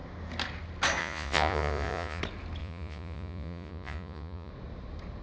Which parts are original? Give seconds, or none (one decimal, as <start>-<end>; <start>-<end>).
0.0-1.0; 2.2-2.6; 4.5-5.2